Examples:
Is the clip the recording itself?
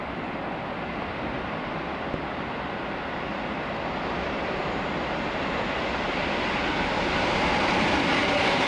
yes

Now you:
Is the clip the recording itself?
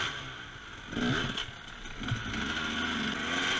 yes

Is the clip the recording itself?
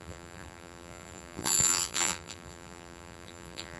no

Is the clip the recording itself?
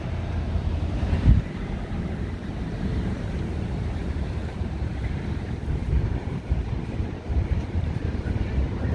no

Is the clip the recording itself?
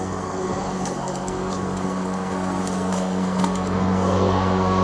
no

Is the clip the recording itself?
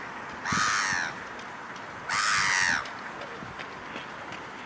yes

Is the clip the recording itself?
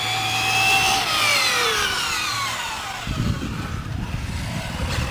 yes